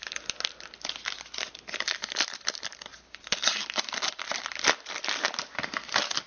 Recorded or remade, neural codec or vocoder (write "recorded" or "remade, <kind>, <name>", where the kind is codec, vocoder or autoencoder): recorded